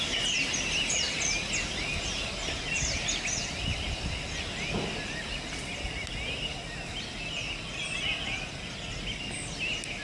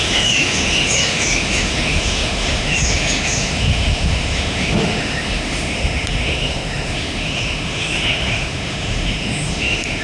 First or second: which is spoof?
second